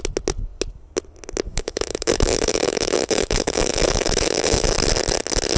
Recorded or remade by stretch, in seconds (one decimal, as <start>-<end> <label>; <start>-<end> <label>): 0.0-1.5 recorded; 1.5-4.7 remade; 4.7-5.6 recorded